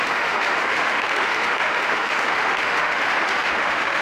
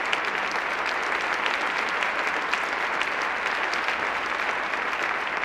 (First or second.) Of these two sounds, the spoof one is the first